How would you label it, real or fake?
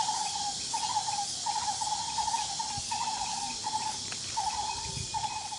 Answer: real